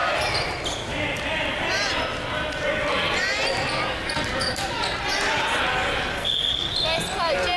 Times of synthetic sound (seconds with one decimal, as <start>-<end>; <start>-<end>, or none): 6.1-6.7